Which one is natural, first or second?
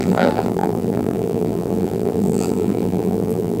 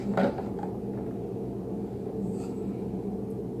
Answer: second